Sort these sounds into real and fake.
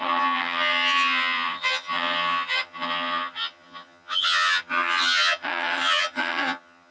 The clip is fake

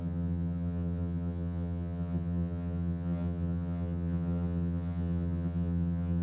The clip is fake